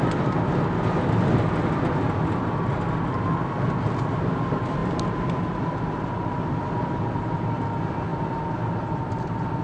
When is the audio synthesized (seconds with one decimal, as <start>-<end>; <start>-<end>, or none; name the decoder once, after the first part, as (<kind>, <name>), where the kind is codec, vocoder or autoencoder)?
none